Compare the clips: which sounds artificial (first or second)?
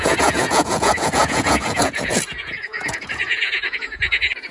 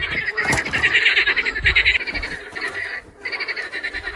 first